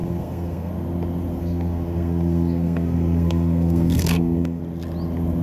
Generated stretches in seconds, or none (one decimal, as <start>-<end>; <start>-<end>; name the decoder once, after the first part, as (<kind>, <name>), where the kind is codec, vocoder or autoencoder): 0.0-0.7 (codec, SNAC); 1.4-4.6